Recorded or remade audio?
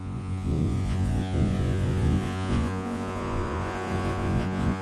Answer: remade